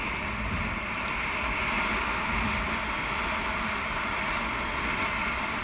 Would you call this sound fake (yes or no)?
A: no